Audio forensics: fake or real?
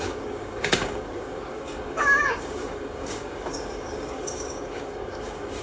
fake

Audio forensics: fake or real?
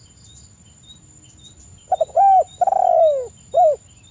real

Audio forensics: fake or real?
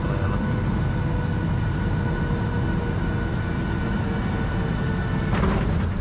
real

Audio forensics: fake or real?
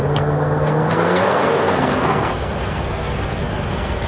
fake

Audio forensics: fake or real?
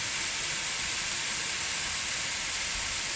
fake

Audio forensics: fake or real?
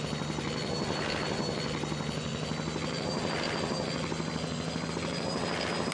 real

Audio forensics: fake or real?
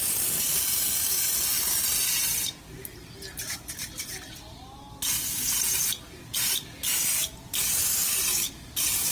real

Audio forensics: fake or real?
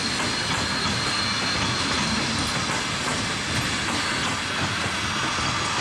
real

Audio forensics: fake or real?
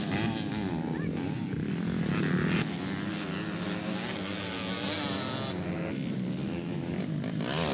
real